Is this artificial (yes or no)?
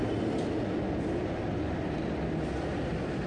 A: no